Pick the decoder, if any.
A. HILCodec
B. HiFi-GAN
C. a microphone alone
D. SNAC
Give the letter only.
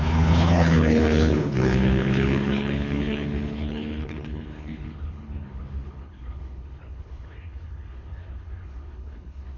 A